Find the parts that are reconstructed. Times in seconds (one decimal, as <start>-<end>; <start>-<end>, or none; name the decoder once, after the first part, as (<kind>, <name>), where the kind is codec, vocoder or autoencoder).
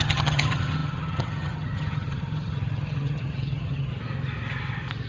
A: 0.0-3.9 (vocoder, HiFi-GAN)